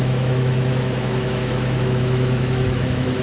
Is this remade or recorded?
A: remade